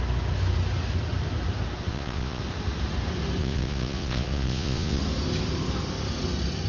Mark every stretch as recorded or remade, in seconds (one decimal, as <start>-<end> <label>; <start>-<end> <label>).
0.0-1.9 recorded; 1.9-2.4 remade; 2.4-3.4 recorded; 3.4-5.0 remade; 5.0-6.7 recorded